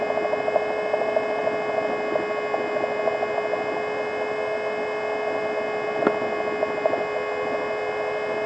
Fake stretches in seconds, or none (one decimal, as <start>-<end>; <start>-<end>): none